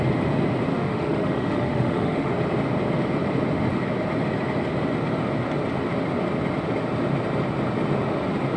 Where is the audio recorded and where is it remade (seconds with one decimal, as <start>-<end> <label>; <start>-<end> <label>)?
0.0-0.7 recorded; 0.7-2.3 remade; 2.3-8.6 recorded